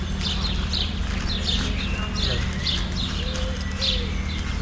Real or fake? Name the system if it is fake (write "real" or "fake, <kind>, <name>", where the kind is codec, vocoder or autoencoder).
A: real